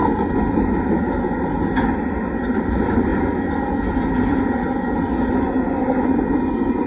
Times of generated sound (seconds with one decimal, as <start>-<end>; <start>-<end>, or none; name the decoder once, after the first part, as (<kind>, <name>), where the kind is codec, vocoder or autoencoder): 2.6-3.1 (vocoder, BigVGAN v2); 5.8-6.9